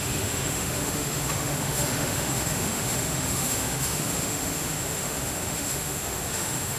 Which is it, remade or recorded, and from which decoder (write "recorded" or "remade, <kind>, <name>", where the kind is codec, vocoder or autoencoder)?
remade, autoencoder, DAC-VAE